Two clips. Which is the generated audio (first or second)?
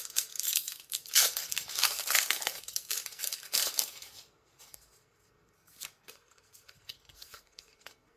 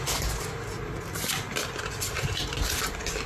first